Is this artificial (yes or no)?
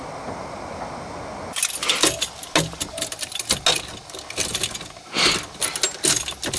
no